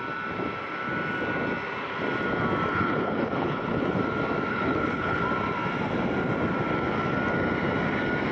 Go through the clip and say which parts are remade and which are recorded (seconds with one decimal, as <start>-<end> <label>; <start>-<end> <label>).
0.0-2.7 recorded; 2.7-4.0 remade; 4.0-4.5 recorded; 4.5-5.2 remade; 5.2-8.3 recorded